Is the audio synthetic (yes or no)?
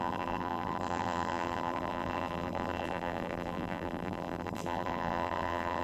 yes